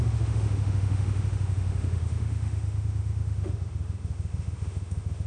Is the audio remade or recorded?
remade